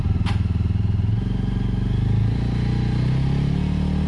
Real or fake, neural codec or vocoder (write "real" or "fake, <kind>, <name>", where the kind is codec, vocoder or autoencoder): real